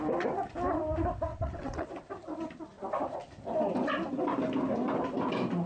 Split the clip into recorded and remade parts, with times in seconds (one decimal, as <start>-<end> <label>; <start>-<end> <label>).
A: 0.0-1.3 recorded; 1.3-1.9 remade; 1.9-5.7 recorded